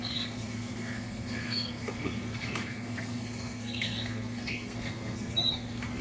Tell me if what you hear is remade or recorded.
remade